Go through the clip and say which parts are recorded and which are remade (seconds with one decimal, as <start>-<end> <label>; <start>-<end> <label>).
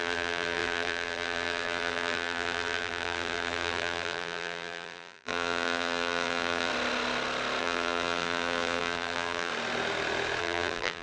0.0-6.7 remade; 6.7-7.6 recorded; 7.6-9.5 remade; 9.5-10.4 recorded; 10.4-11.0 remade